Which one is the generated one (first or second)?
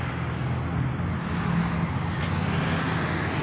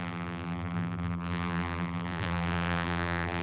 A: second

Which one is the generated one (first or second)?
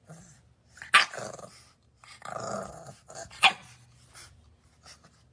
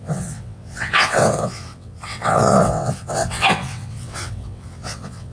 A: second